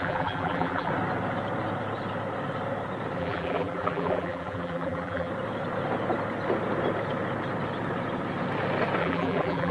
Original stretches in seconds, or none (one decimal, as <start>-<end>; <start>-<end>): 0.9-3.2; 5.3-9.0